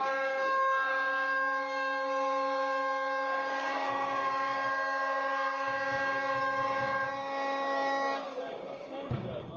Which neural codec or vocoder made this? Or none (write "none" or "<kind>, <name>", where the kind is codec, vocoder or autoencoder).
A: codec, DAC